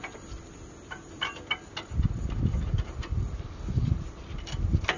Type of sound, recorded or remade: recorded